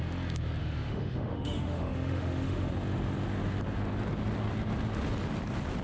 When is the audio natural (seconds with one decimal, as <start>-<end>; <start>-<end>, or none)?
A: 0.0-0.6; 2.7-5.8